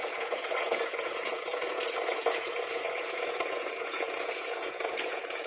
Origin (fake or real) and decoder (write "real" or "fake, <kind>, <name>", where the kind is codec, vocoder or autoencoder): fake, vocoder, Vocos